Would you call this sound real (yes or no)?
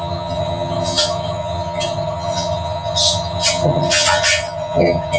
no